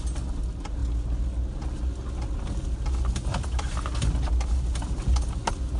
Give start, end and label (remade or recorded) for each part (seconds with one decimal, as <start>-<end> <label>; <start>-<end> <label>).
0.0-5.8 recorded